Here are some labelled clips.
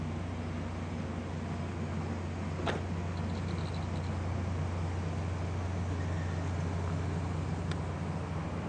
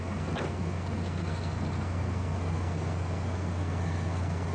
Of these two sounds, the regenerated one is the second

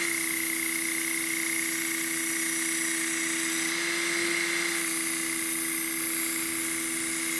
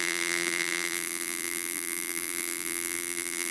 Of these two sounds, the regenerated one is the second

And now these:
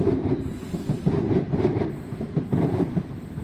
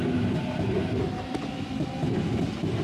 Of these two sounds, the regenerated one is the first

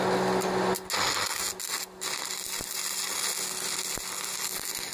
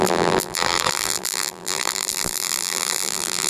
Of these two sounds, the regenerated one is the second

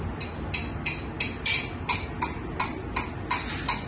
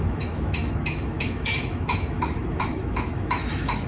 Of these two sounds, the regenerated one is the second